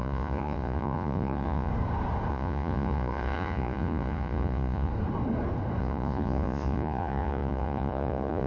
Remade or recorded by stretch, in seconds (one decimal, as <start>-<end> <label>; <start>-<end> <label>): 0.0-1.7 remade; 1.7-2.3 recorded; 2.3-4.9 remade; 4.9-5.8 recorded; 5.8-8.5 remade